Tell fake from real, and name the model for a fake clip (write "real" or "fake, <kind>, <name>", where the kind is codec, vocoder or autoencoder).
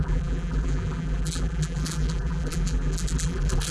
fake, vocoder, BigVGAN v2